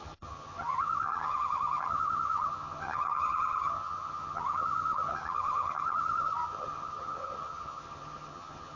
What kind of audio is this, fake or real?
fake